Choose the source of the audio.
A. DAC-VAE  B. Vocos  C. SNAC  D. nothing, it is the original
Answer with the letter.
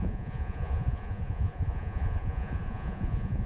B